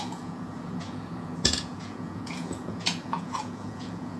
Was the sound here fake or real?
fake